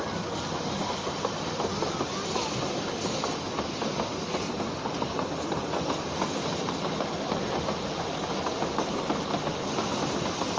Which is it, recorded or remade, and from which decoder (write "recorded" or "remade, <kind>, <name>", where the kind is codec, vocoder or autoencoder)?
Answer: recorded